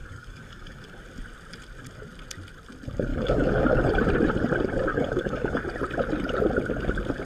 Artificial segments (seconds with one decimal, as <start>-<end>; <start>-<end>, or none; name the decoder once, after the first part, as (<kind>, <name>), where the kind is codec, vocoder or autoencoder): 0.0-1.0 (codec, DAC); 3.1-3.9; 4.9-5.6